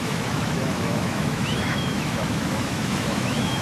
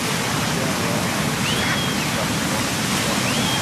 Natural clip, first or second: second